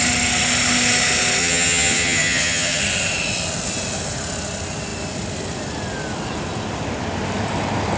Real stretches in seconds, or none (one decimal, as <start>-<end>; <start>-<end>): 0.0-1.4; 2.8-8.0